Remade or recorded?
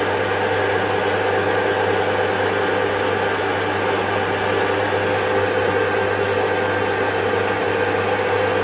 recorded